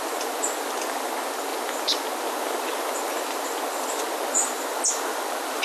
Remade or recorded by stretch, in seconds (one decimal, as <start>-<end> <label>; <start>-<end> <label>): 0.0-5.6 recorded